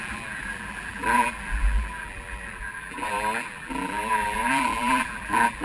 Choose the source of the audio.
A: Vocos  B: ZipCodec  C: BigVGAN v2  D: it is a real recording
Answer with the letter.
C